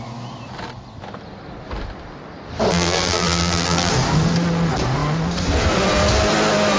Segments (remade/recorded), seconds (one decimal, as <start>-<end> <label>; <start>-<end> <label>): 0.0-2.7 recorded; 2.7-3.9 remade; 3.9-6.8 recorded